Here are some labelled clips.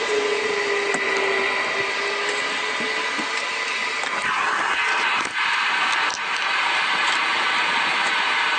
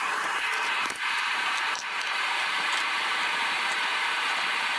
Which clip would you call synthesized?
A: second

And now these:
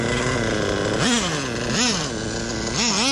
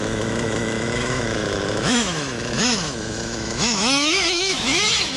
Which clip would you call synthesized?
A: second